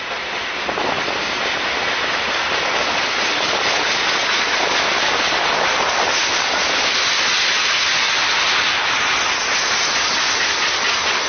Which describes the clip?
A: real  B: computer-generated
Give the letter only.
A